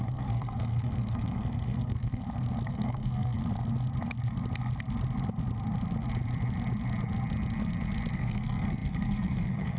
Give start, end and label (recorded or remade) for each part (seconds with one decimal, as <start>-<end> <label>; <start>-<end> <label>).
0.0-2.2 remade; 2.2-2.7 recorded; 2.7-3.4 remade; 3.4-8.1 recorded; 8.1-9.8 remade